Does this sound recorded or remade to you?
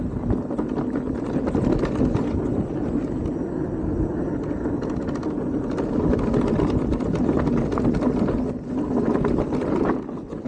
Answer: recorded